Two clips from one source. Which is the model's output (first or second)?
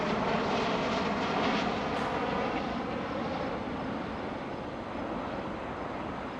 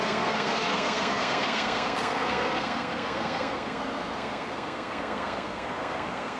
second